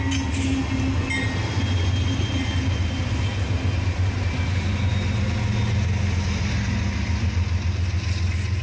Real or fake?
real